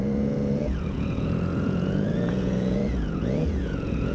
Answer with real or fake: fake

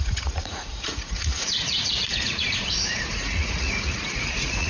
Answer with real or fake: fake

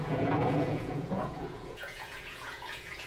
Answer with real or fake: fake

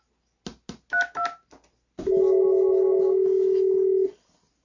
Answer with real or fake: real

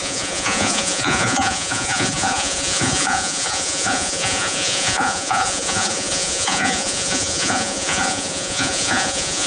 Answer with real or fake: fake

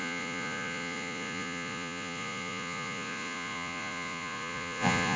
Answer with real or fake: fake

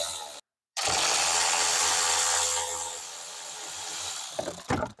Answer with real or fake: real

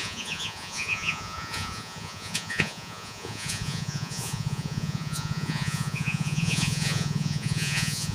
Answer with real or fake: fake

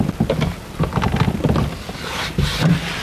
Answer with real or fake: real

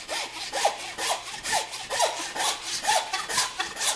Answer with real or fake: real